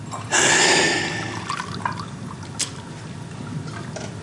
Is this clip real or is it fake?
real